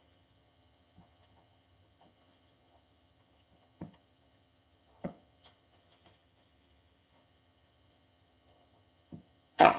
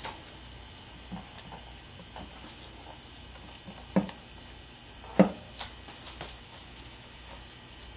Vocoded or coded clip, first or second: first